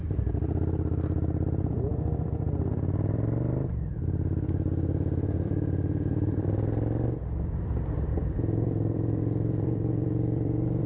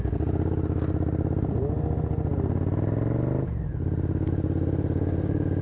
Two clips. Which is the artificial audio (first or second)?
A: first